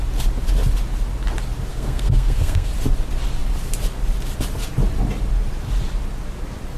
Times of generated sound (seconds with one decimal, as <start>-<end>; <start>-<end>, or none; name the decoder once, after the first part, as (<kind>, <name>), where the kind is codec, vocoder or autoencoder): 1.7-2.7 (codec, SNAC)